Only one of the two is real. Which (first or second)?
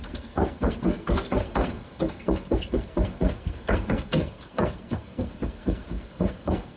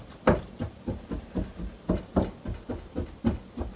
second